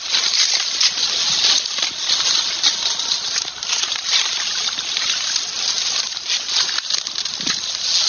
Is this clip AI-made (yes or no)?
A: no